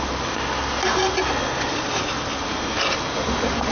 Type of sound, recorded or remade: recorded